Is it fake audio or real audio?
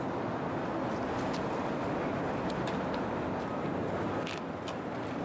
real